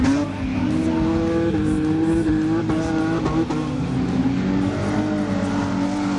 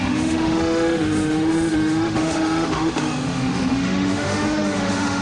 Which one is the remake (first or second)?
second